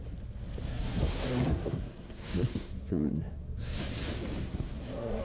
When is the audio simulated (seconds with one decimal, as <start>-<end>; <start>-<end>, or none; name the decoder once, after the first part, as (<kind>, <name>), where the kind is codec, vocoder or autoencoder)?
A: 0.7-3.8 (codec, SNAC); 4.4-5.2